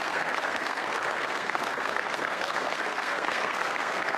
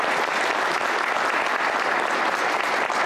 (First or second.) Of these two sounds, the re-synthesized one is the first